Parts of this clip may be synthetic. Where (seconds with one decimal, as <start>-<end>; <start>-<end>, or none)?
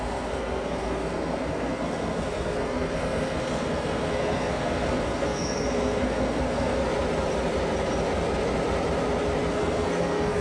0.0-6.8; 9.5-10.4